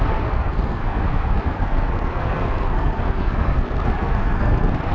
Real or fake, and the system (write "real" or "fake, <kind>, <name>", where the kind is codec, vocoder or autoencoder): fake, codec, SNAC